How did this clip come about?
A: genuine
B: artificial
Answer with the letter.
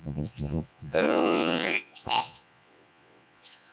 B